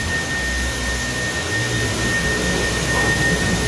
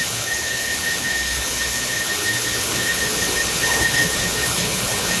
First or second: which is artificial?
second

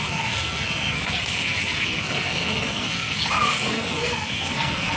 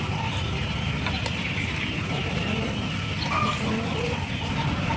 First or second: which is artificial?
first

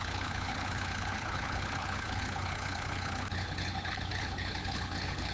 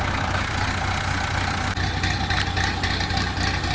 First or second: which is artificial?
first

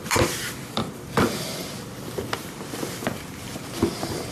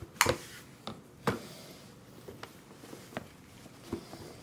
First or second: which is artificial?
first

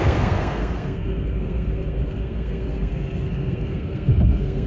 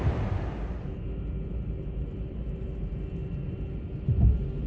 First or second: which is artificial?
first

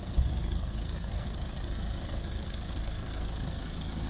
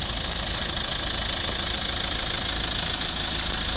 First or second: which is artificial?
first